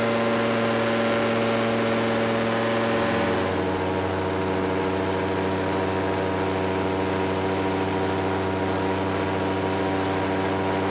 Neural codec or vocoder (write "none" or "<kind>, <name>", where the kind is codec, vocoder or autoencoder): none